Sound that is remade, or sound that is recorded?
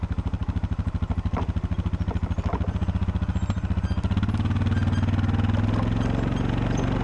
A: recorded